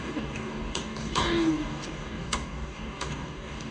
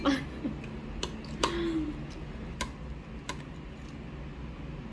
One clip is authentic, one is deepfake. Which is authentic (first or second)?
second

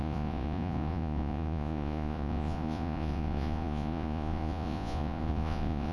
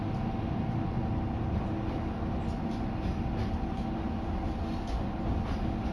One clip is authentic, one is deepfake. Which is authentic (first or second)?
second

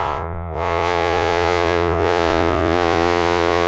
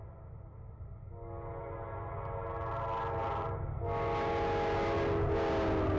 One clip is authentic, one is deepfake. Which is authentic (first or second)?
second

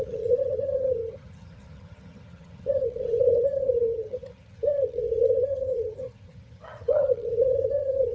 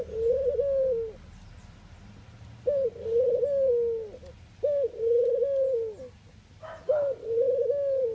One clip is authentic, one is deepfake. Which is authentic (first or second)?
second